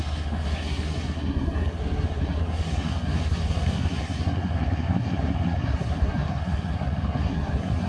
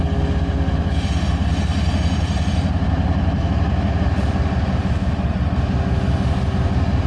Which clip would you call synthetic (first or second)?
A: first